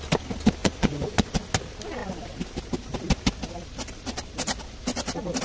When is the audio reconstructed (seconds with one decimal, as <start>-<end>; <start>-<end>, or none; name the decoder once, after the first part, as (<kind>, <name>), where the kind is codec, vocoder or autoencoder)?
0.6-1.3 (vocoder, Vocos)